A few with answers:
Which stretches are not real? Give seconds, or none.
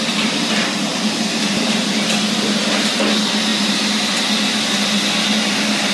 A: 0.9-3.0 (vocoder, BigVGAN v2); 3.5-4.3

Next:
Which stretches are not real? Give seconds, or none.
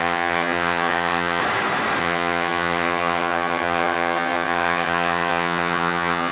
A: 0.0-1.4 (vocoder, HiFi-GAN); 2.0-6.3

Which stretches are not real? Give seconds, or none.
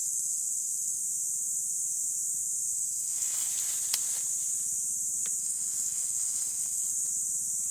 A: 0.0-1.0 (codec, SNAC); 2.7-3.5; 5.4-6.9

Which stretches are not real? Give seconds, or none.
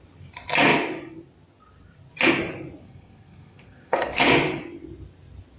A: 2.8-4.2 (codec, SNAC)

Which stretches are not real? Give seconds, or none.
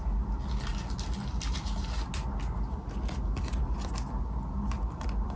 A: none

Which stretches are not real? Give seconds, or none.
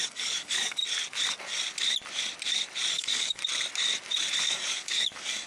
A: 0.0-0.8 (codec, DAC); 2.9-3.4; 4.4-5.5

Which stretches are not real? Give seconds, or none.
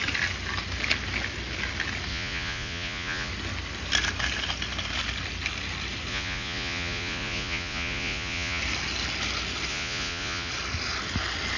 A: 2.1-3.3 (vocoder, Vocos); 6.1-8.6; 9.7-10.5